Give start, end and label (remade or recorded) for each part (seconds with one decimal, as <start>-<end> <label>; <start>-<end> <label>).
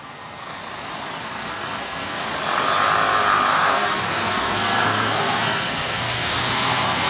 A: 0.0-0.6 remade; 0.6-1.2 recorded; 1.2-2.2 remade; 2.2-3.5 recorded; 3.5-7.1 remade